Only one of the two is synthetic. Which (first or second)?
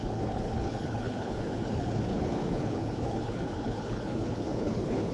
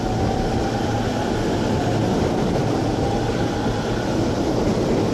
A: first